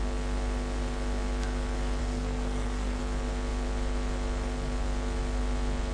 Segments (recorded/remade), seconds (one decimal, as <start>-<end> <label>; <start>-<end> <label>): 0.0-2.0 recorded; 2.0-3.0 remade; 3.0-5.9 recorded

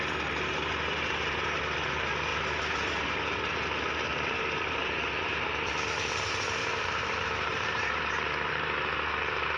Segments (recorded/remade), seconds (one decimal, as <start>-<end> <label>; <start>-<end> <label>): 0.0-4.1 recorded; 4.1-5.7 remade; 5.7-6.6 recorded; 6.6-9.6 remade

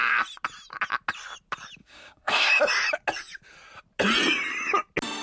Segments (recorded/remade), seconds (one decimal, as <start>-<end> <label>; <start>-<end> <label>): 0.0-1.8 recorded; 1.8-2.5 remade; 2.5-5.2 recorded

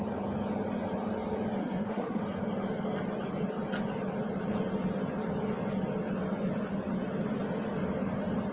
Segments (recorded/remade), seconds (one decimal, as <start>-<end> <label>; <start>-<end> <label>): 0.0-1.6 recorded; 1.6-2.2 remade; 2.2-8.5 recorded

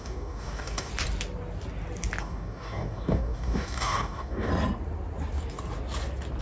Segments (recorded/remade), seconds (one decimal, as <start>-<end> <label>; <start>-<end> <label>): 0.0-0.9 remade; 0.9-2.2 recorded; 2.2-4.5 remade; 4.5-6.4 recorded

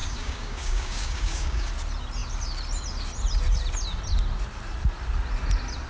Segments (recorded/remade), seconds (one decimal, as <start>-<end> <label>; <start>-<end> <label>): 0.0-1.7 remade; 1.7-5.9 recorded

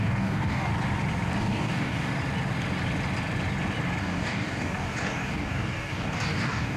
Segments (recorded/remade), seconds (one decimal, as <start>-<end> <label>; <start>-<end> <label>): 0.0-0.7 remade; 0.7-1.4 recorded; 1.4-2.1 remade; 2.1-4.0 recorded; 4.0-6.8 remade

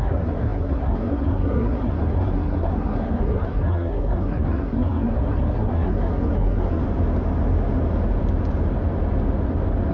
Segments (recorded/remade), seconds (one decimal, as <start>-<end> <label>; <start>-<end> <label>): 0.0-6.8 remade; 6.8-9.9 recorded